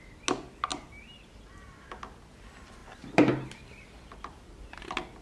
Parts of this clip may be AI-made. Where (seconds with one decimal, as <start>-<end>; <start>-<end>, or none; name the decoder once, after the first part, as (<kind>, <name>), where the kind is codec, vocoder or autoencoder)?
0.7-1.3 (vocoder, BigVGAN v2)